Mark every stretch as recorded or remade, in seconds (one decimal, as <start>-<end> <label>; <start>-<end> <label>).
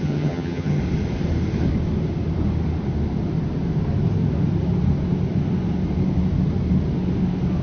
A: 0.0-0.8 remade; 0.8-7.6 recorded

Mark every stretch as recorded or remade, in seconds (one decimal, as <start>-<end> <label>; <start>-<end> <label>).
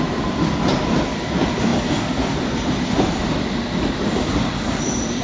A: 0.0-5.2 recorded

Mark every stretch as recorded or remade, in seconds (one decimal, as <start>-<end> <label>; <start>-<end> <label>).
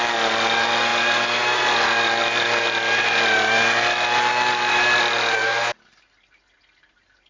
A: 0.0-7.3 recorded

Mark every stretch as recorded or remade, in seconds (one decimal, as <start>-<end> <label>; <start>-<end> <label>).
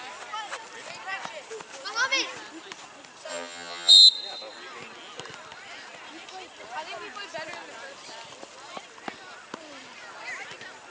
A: 0.0-3.3 recorded; 3.3-3.9 remade; 3.9-10.9 recorded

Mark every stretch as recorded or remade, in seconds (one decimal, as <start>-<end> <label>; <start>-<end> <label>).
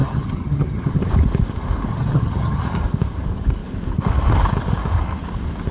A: 0.0-1.1 remade; 1.1-1.9 recorded; 1.9-2.8 remade; 2.8-5.7 recorded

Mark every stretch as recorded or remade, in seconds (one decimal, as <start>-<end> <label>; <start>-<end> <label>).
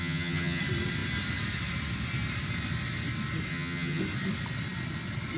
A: 0.0-0.6 remade; 0.6-3.5 recorded; 3.5-4.0 remade; 4.0-5.4 recorded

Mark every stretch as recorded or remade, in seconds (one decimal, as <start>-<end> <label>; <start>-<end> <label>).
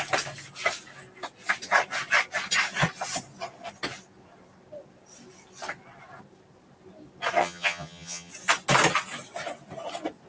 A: 0.0-7.4 recorded; 7.4-8.3 remade; 8.3-10.3 recorded